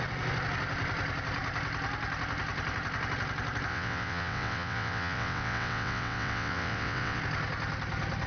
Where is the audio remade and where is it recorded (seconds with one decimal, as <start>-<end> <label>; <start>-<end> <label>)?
0.0-3.7 recorded; 3.7-7.2 remade; 7.2-8.3 recorded